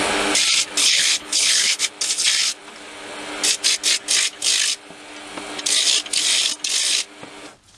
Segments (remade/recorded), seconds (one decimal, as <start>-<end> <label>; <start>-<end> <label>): 0.0-0.8 recorded; 0.8-1.8 remade; 1.8-7.8 recorded